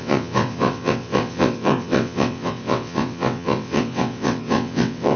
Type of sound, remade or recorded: remade